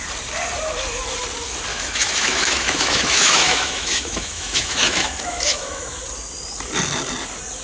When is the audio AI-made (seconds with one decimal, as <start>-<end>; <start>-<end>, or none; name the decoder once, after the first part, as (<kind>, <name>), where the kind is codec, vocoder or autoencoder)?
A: 1.7-6.0 (autoencoder, DAC-VAE)

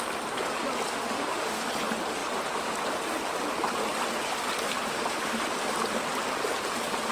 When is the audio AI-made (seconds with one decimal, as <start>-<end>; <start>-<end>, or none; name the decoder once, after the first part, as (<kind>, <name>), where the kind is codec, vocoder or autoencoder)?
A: 0.9-1.6 (autoencoder, DAC-VAE)

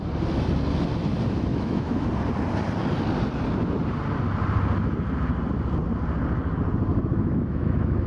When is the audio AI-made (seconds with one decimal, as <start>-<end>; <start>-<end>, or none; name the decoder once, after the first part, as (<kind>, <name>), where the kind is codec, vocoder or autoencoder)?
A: 1.5-2.1 (autoencoder, DAC-VAE); 6.9-8.1